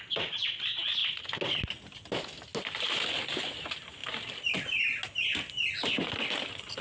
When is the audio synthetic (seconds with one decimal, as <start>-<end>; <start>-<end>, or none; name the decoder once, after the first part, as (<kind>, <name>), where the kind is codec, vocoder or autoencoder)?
none